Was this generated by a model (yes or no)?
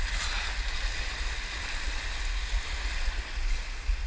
no